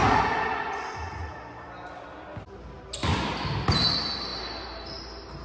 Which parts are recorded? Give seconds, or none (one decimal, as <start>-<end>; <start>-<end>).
0.0-5.4